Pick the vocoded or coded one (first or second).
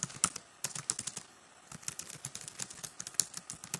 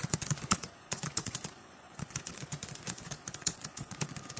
second